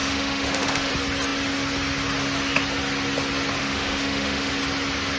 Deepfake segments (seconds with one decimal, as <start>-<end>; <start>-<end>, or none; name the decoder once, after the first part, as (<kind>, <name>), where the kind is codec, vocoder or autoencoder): 0.0-0.9 (autoencoder, DAC-VAE); 3.6-4.5